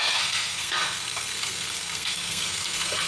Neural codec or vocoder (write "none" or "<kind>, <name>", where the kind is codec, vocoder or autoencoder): codec, SNAC